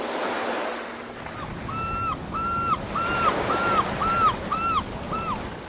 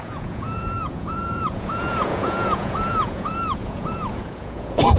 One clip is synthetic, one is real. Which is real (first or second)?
first